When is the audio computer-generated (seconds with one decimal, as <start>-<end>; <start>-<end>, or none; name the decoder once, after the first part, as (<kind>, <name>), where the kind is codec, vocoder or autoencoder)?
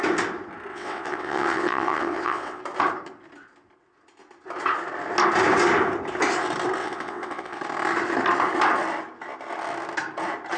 0.7-2.6 (vocoder, WaveNeXt); 6.8-7.6